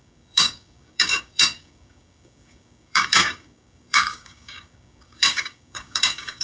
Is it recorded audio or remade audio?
remade